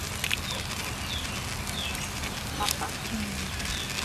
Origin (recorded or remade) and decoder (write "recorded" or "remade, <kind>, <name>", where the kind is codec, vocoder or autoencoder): recorded